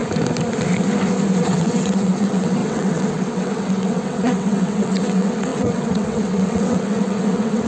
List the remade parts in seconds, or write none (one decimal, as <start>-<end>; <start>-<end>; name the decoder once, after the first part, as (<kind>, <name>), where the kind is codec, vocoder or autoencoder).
1.4-7.7 (vocoder, WaveNeXt)